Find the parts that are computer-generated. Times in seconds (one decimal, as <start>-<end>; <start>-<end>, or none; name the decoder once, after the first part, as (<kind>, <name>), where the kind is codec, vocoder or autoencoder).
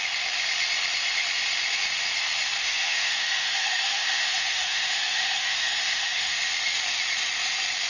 2.6-6.4 (autoencoder, DAC-VAE)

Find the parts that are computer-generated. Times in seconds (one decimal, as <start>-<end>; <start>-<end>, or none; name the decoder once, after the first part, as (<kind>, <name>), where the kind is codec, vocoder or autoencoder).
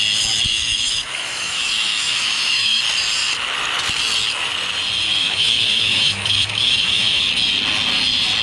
0.5-2.8 (autoencoder, DAC-VAE); 5.2-7.2